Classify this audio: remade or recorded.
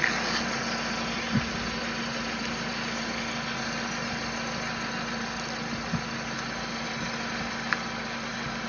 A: recorded